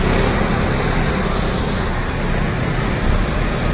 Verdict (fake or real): real